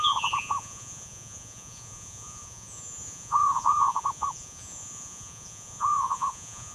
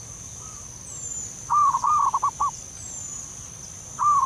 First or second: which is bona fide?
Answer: second